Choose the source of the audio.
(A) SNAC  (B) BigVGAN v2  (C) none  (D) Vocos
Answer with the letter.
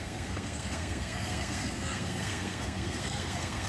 A